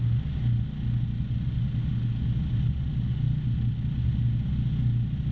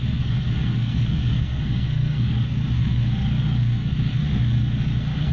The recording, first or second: first